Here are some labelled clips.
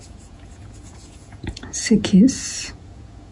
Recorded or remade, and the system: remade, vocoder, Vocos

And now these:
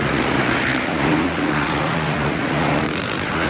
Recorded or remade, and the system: remade, vocoder, Vocos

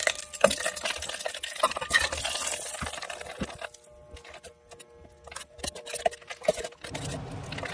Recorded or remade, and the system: recorded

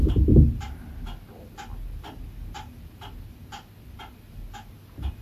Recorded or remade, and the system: recorded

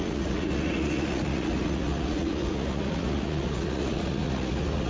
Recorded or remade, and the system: remade, vocoder, Vocos